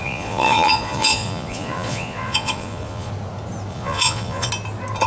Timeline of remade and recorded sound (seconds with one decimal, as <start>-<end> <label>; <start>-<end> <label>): 0.0-3.1 remade; 3.1-3.7 recorded; 3.7-4.5 remade; 4.5-5.1 recorded